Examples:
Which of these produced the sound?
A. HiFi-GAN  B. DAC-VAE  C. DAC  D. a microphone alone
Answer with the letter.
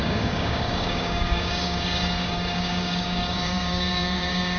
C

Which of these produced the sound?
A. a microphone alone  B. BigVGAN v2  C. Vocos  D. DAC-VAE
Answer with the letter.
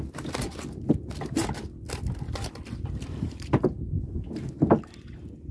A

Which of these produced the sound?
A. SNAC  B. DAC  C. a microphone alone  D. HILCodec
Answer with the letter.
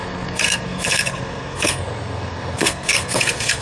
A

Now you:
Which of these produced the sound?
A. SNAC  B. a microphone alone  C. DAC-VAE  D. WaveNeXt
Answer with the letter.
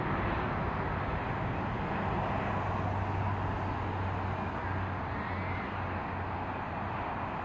B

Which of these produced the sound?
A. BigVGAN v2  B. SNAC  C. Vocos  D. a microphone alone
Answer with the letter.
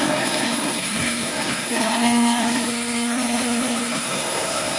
B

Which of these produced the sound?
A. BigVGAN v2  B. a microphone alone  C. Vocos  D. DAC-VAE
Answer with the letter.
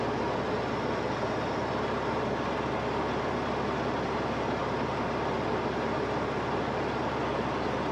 B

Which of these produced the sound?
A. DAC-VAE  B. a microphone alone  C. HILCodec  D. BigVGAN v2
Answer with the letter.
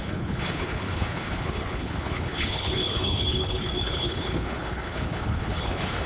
C